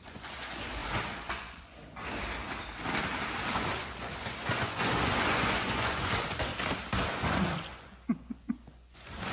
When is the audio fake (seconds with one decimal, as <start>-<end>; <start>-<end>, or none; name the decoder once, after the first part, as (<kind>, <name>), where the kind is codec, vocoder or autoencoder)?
0.0-1.8 (vocoder, Vocos); 3.5-6.5; 7.1-9.3